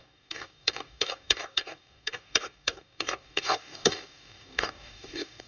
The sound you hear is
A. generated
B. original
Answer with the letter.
A